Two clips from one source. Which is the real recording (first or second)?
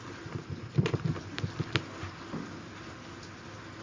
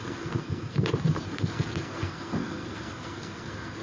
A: first